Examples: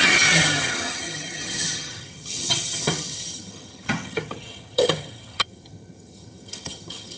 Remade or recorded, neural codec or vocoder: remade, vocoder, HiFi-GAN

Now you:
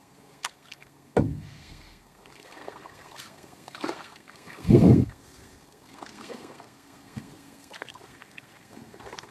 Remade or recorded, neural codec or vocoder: remade, codec, SNAC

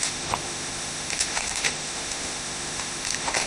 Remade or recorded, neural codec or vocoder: remade, autoencoder, DAC-VAE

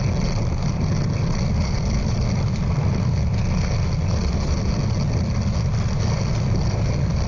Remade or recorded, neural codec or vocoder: recorded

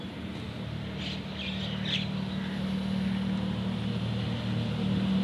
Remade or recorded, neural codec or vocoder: recorded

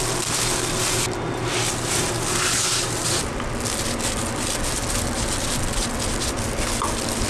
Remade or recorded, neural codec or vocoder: recorded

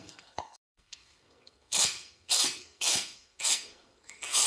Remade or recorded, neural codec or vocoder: remade, codec, SNAC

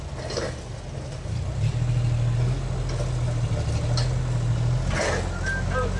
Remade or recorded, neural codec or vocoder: recorded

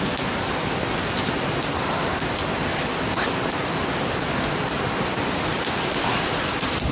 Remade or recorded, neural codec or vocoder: recorded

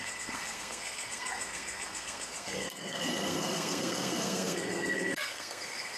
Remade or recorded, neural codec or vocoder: remade, codec, SNAC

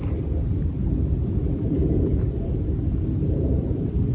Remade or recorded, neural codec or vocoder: recorded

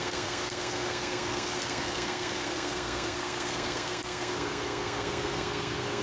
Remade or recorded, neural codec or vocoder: remade, codec, SNAC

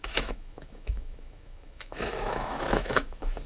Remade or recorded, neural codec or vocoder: remade, autoencoder, DAC-VAE